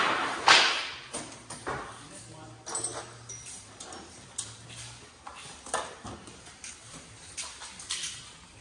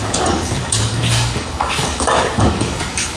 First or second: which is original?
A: first